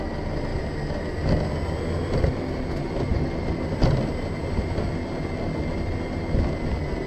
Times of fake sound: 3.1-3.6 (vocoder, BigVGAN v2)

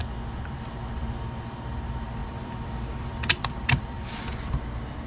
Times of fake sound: 2.2-5.1 (vocoder, BigVGAN v2)

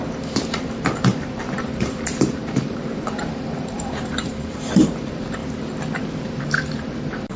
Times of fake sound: 0.0-5.4 (vocoder, BigVGAN v2); 6.0-7.4

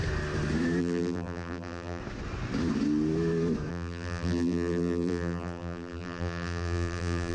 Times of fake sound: 0.8-2.0 (vocoder, BigVGAN v2); 3.7-7.3